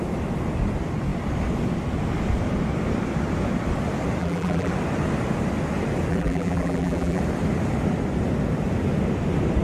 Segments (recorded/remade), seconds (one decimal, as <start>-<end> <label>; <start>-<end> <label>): 0.0-4.2 recorded; 4.2-4.7 remade; 4.7-6.1 recorded; 6.1-7.2 remade; 7.2-9.6 recorded